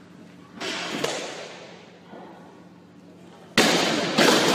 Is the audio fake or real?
real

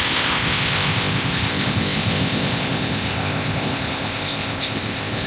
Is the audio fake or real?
fake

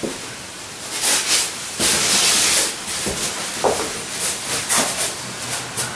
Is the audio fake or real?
real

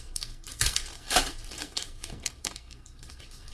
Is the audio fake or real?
fake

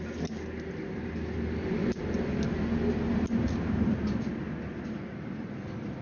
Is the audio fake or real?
real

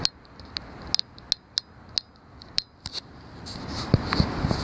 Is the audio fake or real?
real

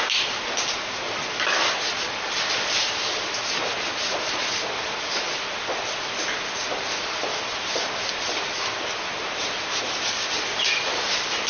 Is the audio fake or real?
real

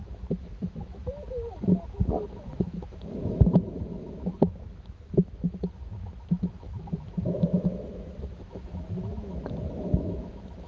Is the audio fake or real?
fake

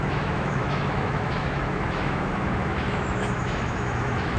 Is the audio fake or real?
fake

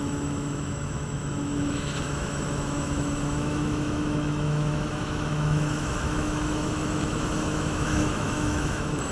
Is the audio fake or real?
fake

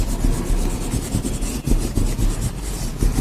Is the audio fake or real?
real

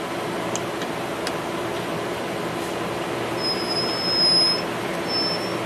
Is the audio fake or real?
real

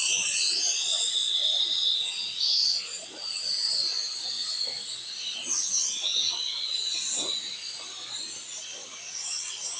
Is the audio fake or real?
real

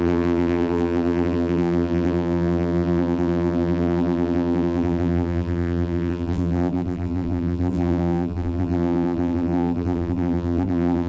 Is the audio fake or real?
fake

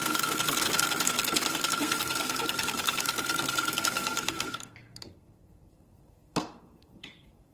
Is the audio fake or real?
fake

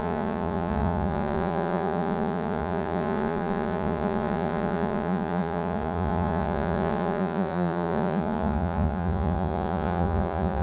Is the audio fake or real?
fake